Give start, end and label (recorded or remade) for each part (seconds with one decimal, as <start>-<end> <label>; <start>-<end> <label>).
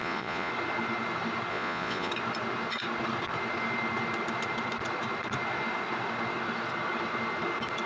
0.0-0.5 remade; 0.5-1.5 recorded; 1.5-2.1 remade; 2.1-7.9 recorded